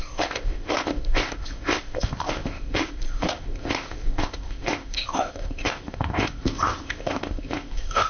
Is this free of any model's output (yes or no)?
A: no